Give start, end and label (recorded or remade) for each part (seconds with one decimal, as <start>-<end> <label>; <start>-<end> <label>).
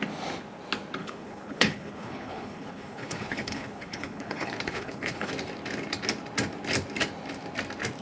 0.0-1.0 recorded; 1.0-5.3 remade; 5.3-8.0 recorded